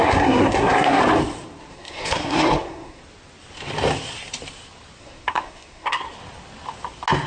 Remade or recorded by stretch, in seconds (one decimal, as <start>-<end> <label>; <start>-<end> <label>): 0.0-1.0 remade; 1.0-1.7 recorded; 1.7-3.0 remade; 3.0-5.0 recorded; 5.0-6.2 remade; 6.2-7.3 recorded